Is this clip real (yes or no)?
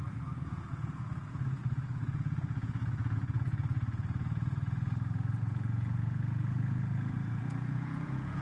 no